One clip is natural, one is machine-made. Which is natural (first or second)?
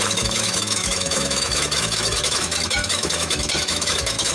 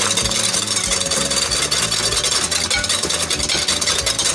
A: second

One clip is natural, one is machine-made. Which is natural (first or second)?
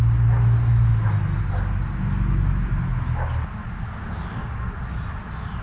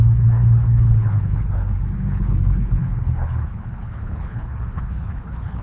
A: first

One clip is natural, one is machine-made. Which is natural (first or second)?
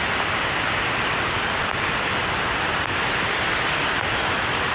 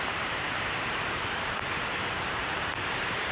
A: first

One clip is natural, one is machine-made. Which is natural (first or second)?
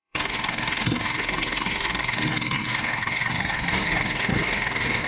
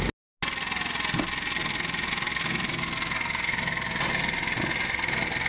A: second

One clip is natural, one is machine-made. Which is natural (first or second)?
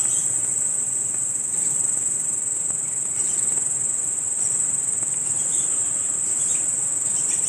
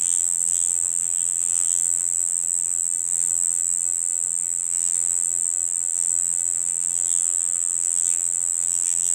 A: first